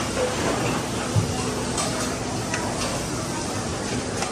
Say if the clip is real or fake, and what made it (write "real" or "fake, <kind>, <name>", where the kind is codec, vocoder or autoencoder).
real